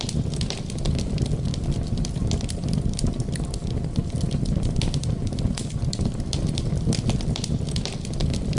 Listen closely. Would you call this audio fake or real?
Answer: real